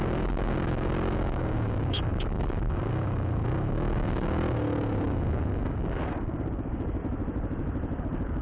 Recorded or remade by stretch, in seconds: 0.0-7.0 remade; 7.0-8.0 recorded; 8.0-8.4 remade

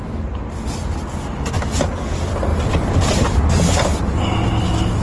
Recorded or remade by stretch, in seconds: 0.0-5.0 recorded

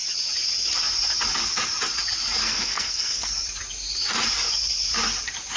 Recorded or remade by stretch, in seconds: 0.0-2.4 recorded; 2.4-3.3 remade; 3.3-5.6 recorded

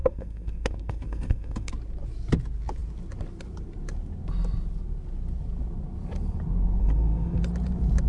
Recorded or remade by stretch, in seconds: 0.0-1.7 remade; 1.7-6.8 recorded; 6.8-7.4 remade; 7.4-8.1 recorded